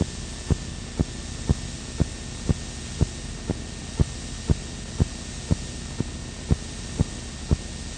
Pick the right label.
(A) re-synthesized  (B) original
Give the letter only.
B